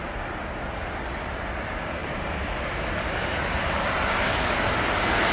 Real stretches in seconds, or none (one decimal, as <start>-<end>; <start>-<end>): 0.0-2.0; 2.8-5.3